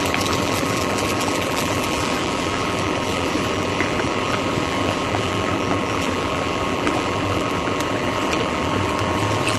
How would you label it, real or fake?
fake